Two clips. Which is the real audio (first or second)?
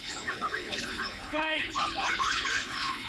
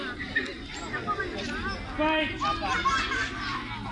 second